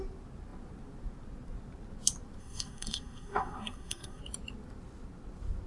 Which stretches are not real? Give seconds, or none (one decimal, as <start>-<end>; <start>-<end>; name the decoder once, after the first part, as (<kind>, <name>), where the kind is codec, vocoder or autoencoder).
2.4-4.2 (codec, SNAC)